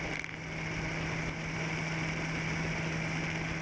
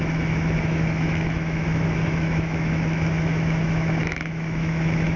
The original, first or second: first